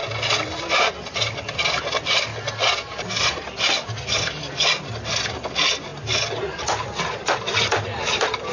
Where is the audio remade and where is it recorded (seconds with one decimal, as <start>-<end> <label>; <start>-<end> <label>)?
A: 0.0-8.5 recorded